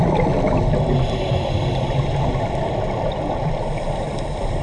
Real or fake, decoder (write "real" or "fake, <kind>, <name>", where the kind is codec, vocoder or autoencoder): real